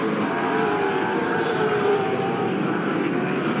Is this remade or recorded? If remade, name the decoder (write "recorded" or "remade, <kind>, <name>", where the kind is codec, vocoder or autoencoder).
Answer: remade, vocoder, BigVGAN v2